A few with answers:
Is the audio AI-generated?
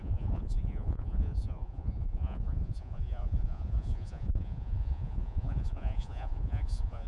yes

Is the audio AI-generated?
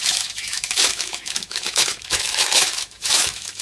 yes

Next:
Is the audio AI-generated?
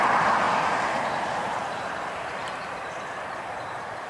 yes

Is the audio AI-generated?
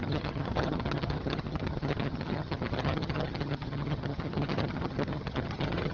yes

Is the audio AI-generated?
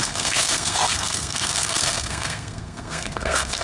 yes